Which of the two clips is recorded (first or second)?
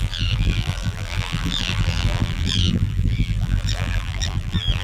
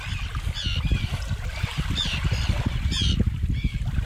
second